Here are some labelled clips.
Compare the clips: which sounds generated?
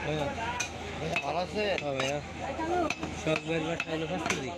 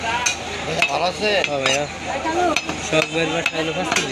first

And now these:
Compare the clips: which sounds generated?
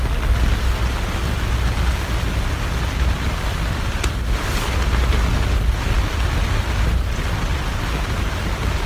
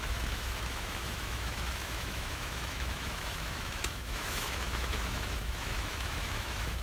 second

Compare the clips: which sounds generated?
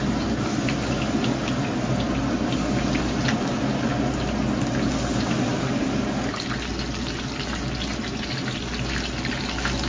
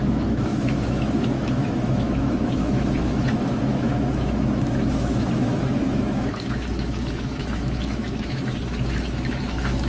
second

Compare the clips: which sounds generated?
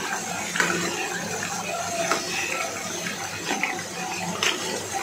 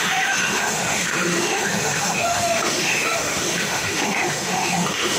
second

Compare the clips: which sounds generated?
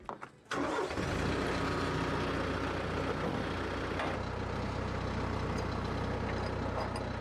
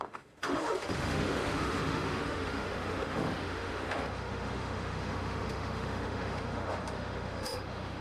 second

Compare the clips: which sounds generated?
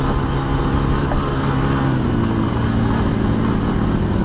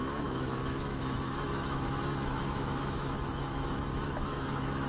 second